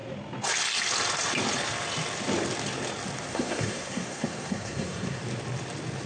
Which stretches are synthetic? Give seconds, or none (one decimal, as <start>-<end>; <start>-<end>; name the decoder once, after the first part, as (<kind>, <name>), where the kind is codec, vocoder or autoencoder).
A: 3.3-5.2 (codec, SNAC)